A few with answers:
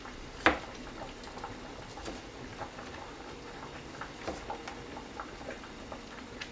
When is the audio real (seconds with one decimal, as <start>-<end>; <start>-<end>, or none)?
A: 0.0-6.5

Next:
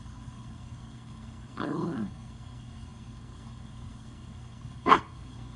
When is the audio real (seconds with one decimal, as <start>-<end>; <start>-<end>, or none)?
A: none

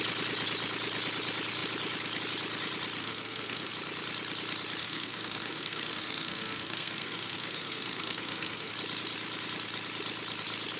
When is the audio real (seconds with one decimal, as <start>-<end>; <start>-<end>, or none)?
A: 0.0-3.0; 3.7-4.8; 8.7-10.8

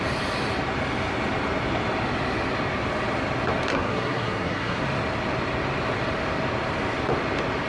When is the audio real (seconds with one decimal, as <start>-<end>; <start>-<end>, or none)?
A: 0.0-3.7; 4.8-7.7

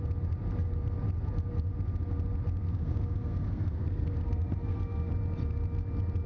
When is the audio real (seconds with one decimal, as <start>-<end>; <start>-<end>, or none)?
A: 0.0-2.6; 5.1-6.3

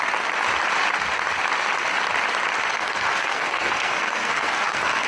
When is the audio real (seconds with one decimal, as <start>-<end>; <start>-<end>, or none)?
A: 0.0-2.7

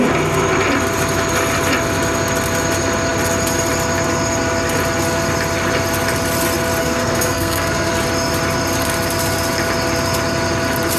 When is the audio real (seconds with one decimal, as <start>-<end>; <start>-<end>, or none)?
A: 0.0-6.8; 7.9-11.0